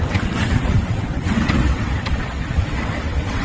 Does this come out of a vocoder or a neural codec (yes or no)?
yes